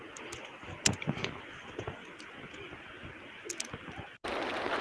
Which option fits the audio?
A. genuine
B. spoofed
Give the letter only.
A